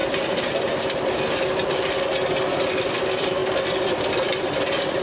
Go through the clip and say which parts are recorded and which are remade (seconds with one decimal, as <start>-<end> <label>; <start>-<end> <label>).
0.0-2.8 recorded; 2.8-3.4 remade; 3.4-3.9 recorded; 3.9-5.0 remade